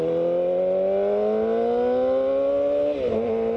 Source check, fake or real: real